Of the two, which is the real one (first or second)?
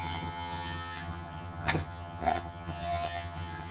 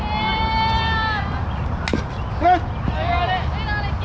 second